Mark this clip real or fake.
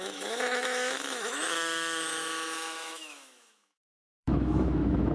fake